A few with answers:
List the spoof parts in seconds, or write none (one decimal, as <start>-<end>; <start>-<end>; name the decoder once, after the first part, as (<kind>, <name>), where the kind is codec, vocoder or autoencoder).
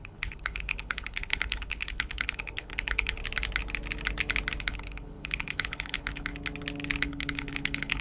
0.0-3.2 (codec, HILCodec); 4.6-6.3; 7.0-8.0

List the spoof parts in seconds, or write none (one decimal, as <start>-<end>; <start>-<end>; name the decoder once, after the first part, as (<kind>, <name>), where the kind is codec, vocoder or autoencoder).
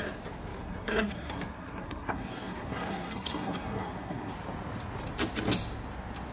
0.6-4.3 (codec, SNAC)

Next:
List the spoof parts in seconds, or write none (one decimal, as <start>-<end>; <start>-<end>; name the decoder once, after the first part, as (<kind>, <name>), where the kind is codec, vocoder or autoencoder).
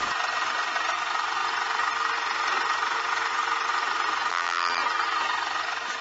4.3-4.8 (vocoder, BigVGAN v2)